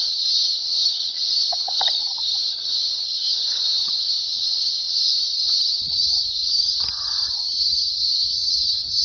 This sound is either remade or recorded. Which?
remade